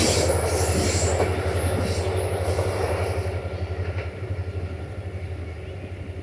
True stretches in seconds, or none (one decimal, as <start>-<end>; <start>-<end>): 0.0-3.4; 4.6-6.2